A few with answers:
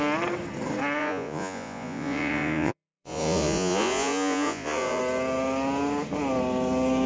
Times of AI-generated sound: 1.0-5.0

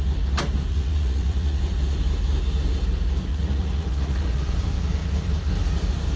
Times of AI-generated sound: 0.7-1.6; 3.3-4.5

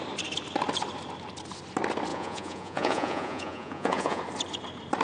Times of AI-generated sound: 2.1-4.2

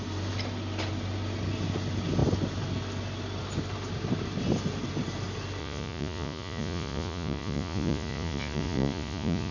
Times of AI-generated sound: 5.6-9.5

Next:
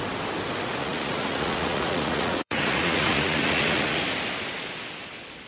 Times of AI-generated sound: 0.8-4.0

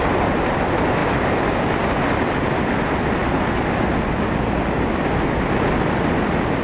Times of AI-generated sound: none